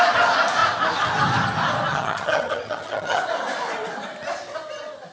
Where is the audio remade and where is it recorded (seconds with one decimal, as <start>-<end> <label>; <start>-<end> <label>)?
0.0-1.9 recorded; 1.9-3.2 remade; 3.2-5.1 recorded